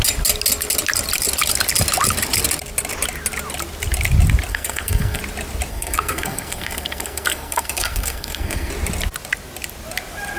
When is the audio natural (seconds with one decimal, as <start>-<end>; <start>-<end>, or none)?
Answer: 0.0-4.5; 5.2-5.7; 8.7-10.4